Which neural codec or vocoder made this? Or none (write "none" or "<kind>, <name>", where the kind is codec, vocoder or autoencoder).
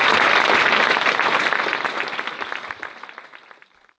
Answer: none